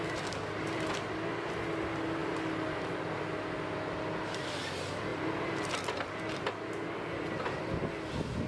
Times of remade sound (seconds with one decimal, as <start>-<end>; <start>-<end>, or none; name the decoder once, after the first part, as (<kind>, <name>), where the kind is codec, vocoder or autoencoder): 5.1-6.1 (vocoder, BigVGAN v2)